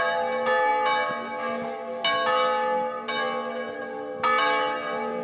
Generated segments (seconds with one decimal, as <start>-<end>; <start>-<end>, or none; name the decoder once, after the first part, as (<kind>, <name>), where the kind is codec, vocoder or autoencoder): none